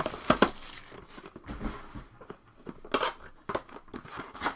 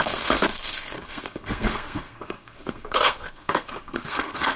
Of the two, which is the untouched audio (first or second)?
first